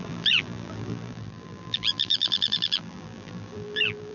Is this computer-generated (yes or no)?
yes